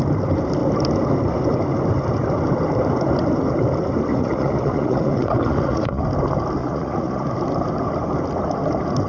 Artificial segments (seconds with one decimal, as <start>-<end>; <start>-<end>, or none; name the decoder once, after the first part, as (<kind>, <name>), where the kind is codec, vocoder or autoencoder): 4.1-6.0 (vocoder, Vocos); 6.6-7.3